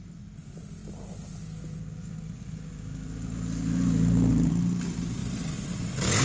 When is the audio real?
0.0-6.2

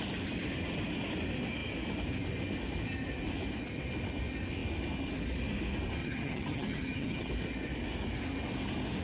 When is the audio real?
0.0-6.0; 7.3-9.0

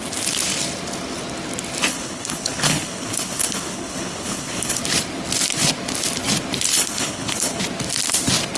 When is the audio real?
0.0-1.9; 4.8-6.7; 7.6-8.6

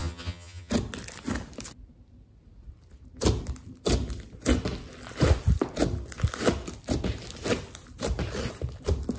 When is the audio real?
0.7-9.2

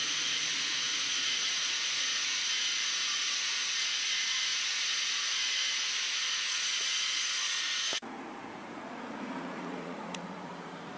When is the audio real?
none